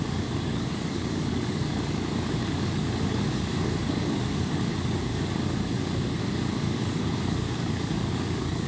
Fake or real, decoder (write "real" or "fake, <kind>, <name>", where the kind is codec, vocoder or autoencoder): fake, codec, DAC